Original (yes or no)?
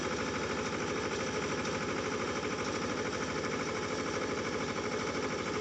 yes